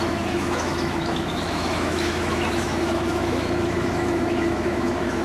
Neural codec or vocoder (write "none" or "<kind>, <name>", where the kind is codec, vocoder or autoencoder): autoencoder, DAC-VAE